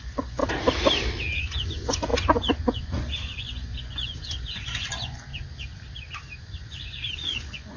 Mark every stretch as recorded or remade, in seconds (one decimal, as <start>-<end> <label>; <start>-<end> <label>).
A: 0.0-0.4 remade; 0.4-1.4 recorded; 1.4-5.3 remade; 5.3-6.4 recorded; 6.4-7.8 remade

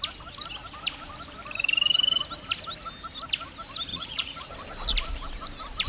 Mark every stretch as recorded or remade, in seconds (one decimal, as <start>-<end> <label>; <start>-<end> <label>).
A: 0.0-3.9 recorded; 3.9-4.5 remade; 4.5-5.9 recorded

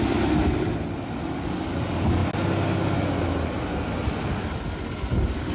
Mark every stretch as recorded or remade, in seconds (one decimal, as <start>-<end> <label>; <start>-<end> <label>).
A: 0.0-5.5 recorded

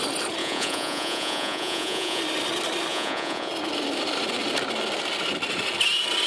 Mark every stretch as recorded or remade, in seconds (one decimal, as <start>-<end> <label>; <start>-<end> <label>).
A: 0.0-0.4 recorded; 0.4-2.2 remade; 2.2-2.9 recorded; 2.9-3.5 remade; 3.5-6.3 recorded

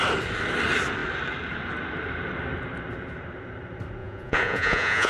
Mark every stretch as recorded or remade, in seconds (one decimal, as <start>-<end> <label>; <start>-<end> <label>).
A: 0.0-4.0 recorded; 4.0-5.1 remade

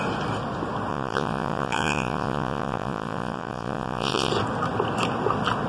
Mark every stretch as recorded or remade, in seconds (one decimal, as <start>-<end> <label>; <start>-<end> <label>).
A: 0.0-0.9 recorded; 0.9-4.3 remade; 4.3-5.7 recorded

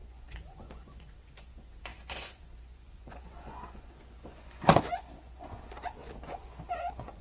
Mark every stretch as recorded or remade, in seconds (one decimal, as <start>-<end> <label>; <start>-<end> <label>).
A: 0.0-7.2 remade